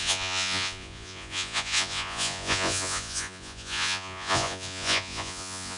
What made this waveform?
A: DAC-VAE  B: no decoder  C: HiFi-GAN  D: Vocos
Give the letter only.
D